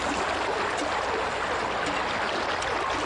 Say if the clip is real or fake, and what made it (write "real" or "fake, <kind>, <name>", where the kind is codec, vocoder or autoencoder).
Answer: real